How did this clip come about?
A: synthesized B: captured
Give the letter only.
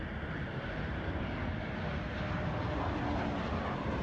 B